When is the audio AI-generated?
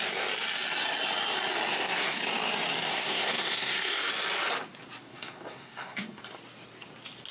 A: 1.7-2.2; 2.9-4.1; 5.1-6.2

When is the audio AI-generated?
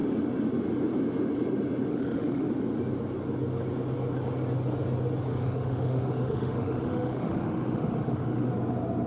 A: 1.9-2.5; 5.3-8.5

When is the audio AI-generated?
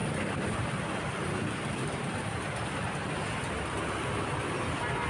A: 0.0-3.1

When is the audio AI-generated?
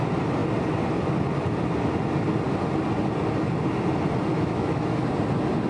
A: 4.3-5.0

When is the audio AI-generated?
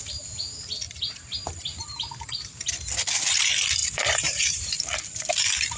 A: 3.8-4.8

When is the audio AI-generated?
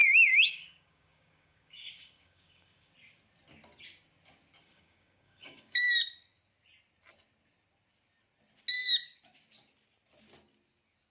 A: 0.0-2.9; 4.6-5.9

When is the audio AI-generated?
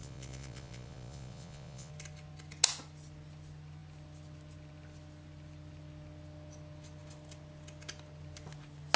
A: 0.0-1.9